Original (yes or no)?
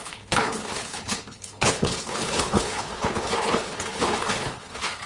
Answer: no